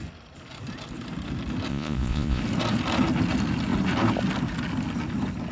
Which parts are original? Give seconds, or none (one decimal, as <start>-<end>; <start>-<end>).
0.0-1.7; 2.4-5.5